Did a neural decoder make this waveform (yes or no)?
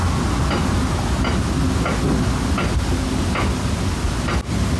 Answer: no